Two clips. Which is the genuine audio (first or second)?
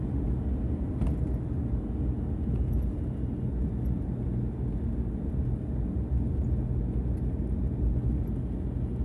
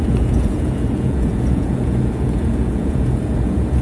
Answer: first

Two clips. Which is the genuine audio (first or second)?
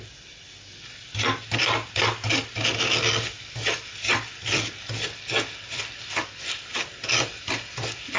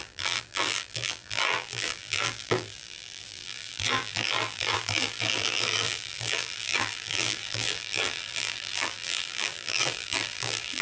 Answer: first